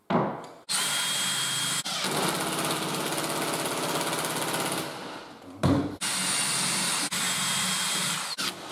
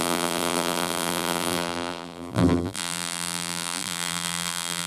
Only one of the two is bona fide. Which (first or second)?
first